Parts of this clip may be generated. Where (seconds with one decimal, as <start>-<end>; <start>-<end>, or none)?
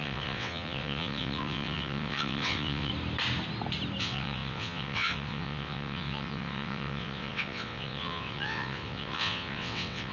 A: 0.0-2.9; 4.0-10.1